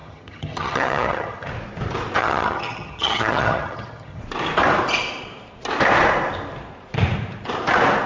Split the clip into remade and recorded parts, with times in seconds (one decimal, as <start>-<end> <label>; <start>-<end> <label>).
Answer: 0.0-1.5 remade; 1.5-2.2 recorded; 2.2-4.2 remade; 4.2-8.1 recorded